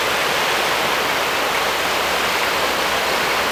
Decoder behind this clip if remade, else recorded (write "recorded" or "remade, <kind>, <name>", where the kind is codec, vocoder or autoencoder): recorded